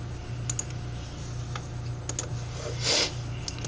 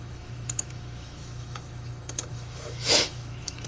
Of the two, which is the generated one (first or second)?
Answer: second